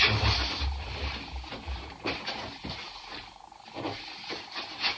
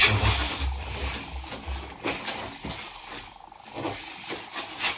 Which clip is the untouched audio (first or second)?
second